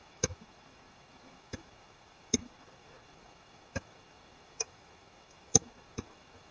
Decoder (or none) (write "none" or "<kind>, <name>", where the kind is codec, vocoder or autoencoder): autoencoder, DAC-VAE